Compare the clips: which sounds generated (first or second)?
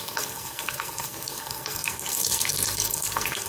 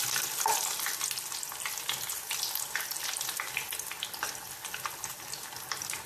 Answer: first